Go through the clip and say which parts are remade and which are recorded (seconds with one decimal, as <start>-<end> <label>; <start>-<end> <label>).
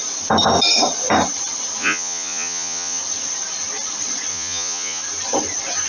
0.0-1.8 recorded; 1.8-3.0 remade; 3.0-4.3 recorded; 4.3-5.0 remade; 5.0-5.9 recorded